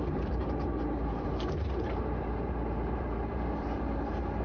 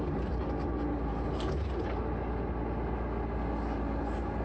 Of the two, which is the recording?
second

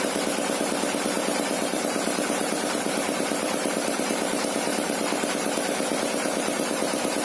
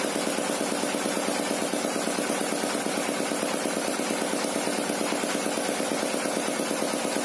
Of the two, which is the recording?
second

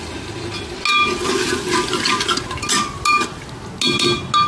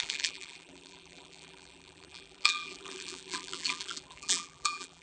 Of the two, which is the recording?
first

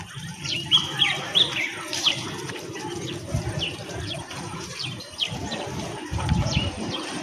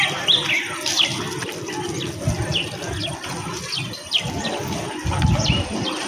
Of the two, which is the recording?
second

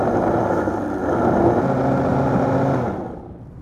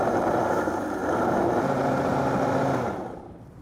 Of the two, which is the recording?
first